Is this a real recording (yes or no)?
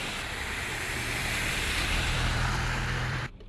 no